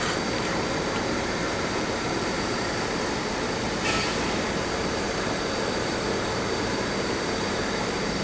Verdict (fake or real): fake